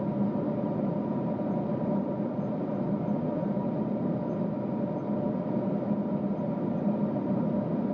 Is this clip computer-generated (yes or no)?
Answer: no